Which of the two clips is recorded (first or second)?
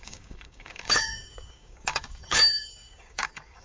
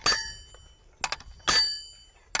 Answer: second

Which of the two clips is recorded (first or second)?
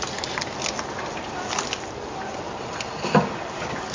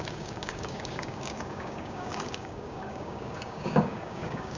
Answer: first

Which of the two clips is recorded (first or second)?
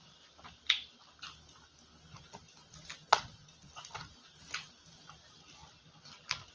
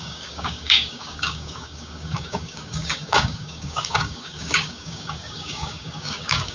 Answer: first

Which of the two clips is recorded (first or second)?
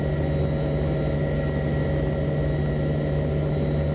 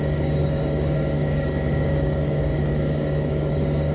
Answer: first